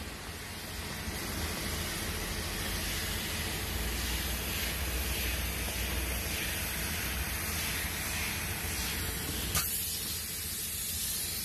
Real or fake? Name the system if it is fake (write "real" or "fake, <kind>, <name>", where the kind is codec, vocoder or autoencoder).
real